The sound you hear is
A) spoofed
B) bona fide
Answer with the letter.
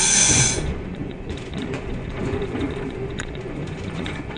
A